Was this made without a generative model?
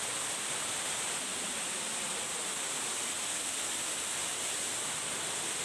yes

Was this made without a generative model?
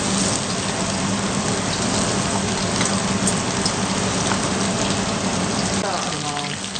yes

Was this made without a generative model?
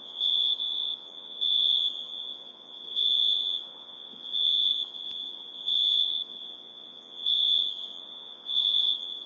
no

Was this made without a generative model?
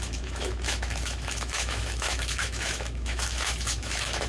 no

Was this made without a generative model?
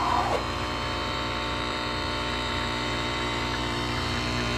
no